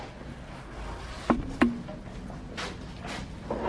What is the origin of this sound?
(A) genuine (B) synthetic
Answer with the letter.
A